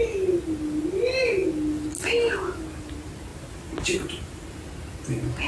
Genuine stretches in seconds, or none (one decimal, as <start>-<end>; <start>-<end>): 0.0-5.5